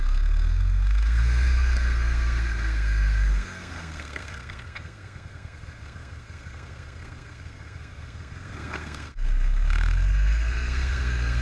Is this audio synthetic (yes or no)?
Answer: yes